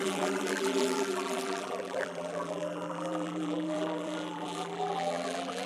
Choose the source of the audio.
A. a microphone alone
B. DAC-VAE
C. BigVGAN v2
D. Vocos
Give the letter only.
C